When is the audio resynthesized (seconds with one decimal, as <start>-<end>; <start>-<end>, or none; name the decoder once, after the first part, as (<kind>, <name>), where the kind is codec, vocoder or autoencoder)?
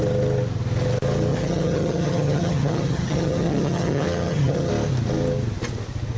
1.3-4.7 (vocoder, HiFi-GAN)